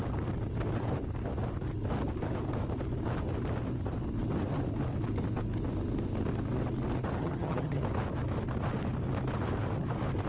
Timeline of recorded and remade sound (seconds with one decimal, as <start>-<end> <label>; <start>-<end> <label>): 0.0-7.2 recorded; 7.2-7.8 remade; 7.8-10.3 recorded